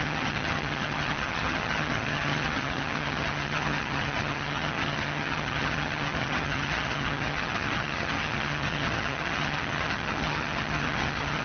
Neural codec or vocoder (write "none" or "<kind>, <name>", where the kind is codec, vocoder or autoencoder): vocoder, HiFi-GAN